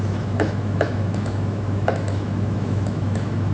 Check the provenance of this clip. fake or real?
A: fake